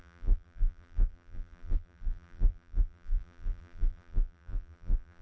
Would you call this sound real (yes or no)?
no